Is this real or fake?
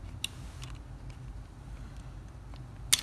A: real